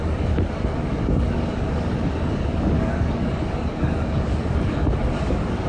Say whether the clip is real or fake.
fake